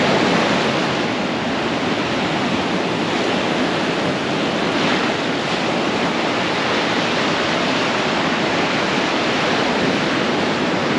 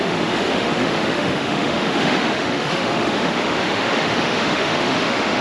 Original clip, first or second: first